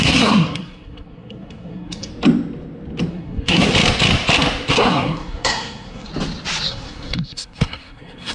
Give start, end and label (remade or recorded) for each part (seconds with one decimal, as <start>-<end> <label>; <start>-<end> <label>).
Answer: 0.0-2.1 remade; 2.1-3.1 recorded; 3.1-3.7 remade; 3.7-4.7 recorded; 4.7-6.1 remade; 6.1-6.7 recorded; 6.7-8.3 remade